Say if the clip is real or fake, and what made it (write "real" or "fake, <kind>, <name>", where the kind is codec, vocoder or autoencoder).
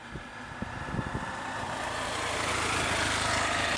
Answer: real